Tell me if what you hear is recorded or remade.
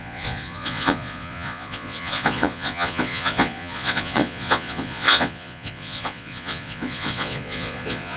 remade